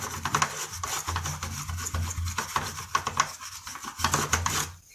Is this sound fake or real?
real